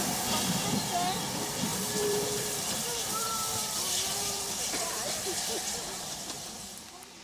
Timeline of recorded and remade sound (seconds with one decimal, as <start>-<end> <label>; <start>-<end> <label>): 0.0-1.7 recorded; 1.7-4.6 remade; 4.6-7.2 recorded